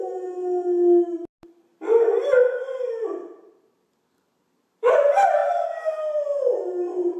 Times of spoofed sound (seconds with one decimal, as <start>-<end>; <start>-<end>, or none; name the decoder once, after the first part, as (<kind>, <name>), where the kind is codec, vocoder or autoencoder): none